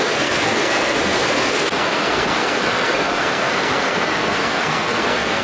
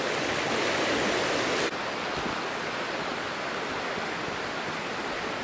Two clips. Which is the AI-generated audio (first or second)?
first